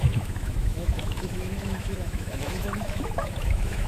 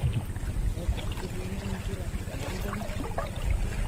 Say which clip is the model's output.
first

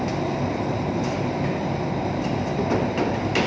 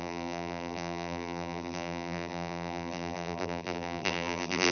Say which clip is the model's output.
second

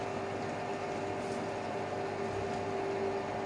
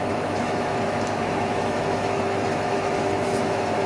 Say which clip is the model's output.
second